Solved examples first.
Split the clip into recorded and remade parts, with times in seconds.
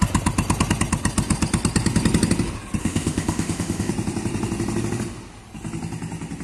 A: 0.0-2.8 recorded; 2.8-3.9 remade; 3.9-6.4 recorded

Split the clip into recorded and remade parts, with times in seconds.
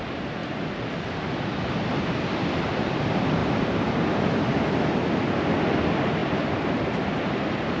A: 0.0-3.4 recorded; 3.4-4.1 remade; 4.1-6.2 recorded; 6.2-7.8 remade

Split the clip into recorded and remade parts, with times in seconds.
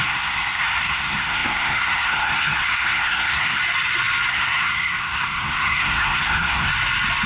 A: 0.0-3.6 remade; 3.6-4.3 recorded; 4.3-6.7 remade; 6.7-7.3 recorded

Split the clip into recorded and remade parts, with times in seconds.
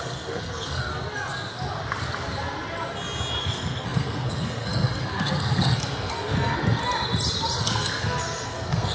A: 0.0-0.9 remade; 0.9-3.4 recorded; 3.4-6.8 remade; 6.8-7.6 recorded; 7.6-8.9 remade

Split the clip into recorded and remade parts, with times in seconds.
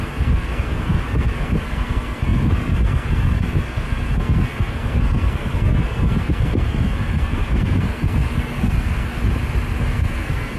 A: 0.0-9.2 remade; 9.2-9.8 recorded; 9.8-10.6 remade